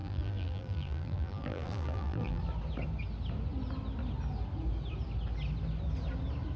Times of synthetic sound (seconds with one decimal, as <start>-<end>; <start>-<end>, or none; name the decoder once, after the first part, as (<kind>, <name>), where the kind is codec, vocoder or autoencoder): 0.0-2.4 (vocoder, BigVGAN v2)

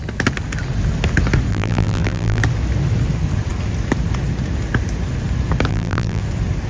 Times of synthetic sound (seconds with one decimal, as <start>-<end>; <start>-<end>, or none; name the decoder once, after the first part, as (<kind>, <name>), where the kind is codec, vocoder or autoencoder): 1.5-2.4 (vocoder, BigVGAN v2); 5.7-6.2

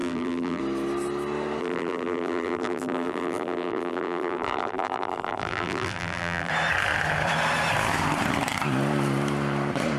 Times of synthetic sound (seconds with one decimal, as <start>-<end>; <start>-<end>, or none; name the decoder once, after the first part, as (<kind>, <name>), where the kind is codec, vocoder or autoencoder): 0.0-0.6 (vocoder, BigVGAN v2); 1.6-6.5

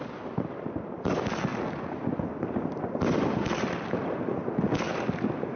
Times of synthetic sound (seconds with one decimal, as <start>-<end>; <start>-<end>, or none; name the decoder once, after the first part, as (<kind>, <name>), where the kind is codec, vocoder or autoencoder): none

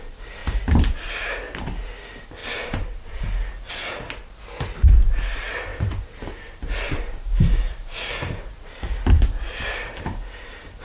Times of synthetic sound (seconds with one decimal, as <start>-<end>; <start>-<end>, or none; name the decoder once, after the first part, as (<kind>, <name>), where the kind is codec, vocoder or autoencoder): 0.4-1.4 (vocoder, BigVGAN v2); 5.7-10.2

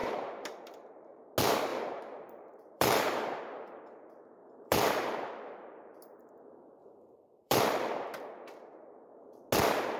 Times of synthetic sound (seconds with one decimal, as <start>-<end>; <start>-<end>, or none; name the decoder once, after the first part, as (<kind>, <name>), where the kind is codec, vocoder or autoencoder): 0.0-1.2 (vocoder, BigVGAN v2); 1.7-3.8; 4.4-6.3; 6.8-7.6

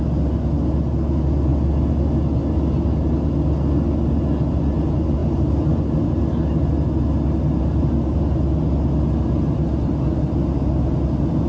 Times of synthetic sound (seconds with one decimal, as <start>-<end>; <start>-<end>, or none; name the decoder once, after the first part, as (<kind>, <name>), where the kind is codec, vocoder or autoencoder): none

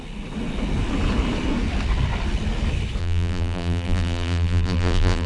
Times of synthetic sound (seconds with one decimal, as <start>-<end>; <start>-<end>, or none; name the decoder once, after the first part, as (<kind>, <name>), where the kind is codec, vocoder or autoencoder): 3.0-5.3 (vocoder, BigVGAN v2)